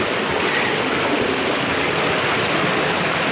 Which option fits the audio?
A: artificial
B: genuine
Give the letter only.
B